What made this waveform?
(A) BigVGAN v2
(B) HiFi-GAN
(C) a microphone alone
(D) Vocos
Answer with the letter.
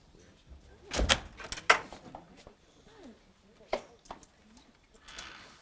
C